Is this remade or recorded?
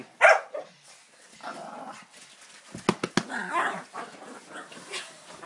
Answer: recorded